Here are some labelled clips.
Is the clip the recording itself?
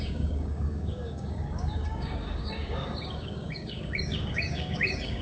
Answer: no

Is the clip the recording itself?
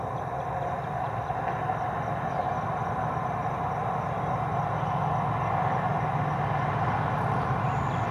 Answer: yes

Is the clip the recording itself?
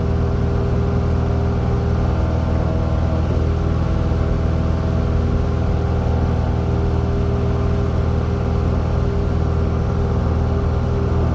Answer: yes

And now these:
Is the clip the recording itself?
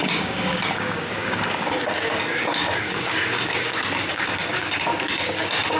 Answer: no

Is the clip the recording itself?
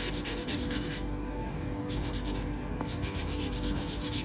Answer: no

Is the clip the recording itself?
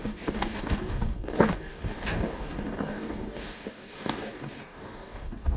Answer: no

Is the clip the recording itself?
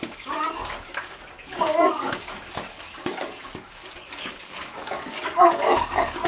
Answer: no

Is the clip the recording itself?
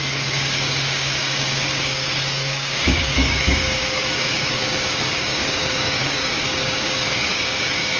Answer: no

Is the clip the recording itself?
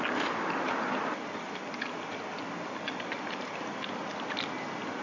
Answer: yes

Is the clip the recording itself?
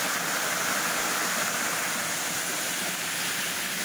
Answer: yes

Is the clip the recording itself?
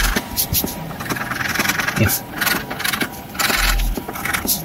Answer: yes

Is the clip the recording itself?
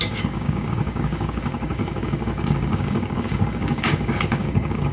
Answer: no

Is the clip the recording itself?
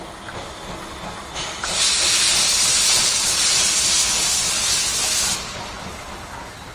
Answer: yes